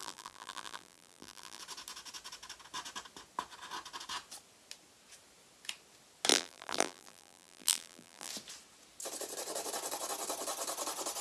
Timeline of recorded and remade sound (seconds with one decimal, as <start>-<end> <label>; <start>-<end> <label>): 0.0-1.6 remade; 1.6-6.3 recorded; 6.3-8.3 remade; 8.3-11.2 recorded